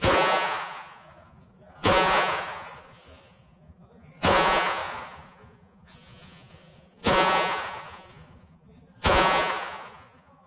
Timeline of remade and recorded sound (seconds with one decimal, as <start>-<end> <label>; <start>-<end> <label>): 0.0-10.5 remade